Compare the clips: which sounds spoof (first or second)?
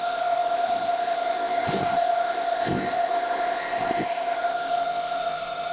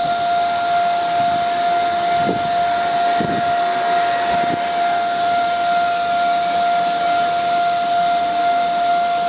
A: first